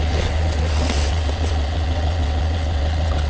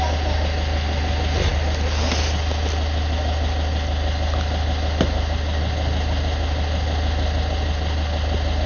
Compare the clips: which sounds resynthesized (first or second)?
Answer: first